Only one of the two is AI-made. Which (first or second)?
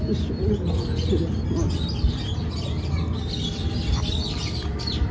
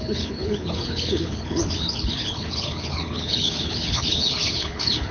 second